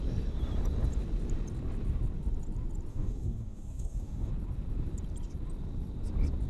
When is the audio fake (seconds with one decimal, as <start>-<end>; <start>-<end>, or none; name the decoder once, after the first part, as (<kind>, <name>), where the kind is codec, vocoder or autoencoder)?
2.9-4.3 (codec, DAC)